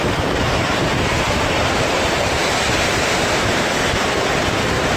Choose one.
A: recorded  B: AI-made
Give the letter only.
B